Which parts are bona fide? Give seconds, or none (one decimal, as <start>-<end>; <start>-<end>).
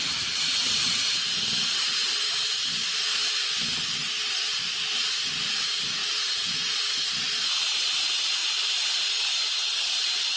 4.0-5.4